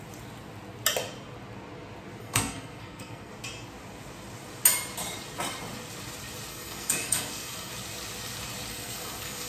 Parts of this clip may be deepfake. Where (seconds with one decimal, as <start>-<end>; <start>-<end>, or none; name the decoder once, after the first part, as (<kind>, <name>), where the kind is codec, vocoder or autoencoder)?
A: 2.2-3.3 (codec, SNAC); 6.5-7.7; 8.7-9.5